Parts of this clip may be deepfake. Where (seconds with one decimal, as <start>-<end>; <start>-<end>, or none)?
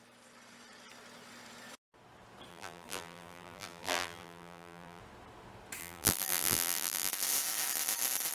2.5-5.0; 5.8-7.1